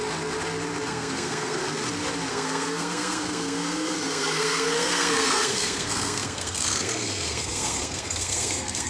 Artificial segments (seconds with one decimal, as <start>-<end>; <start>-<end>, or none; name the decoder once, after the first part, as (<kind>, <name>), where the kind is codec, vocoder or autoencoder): 0.9-1.6 (codec, SNAC); 2.3-8.9